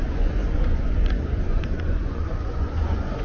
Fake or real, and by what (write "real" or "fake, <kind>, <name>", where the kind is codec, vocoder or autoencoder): fake, vocoder, Vocos